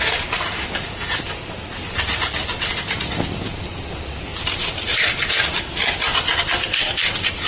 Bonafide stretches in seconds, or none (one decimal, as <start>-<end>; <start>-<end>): 2.3-4.2